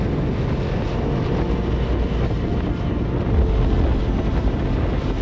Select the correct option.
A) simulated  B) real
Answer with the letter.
B